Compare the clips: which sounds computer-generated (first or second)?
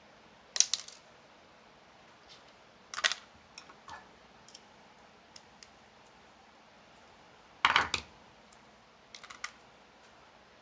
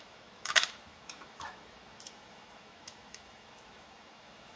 second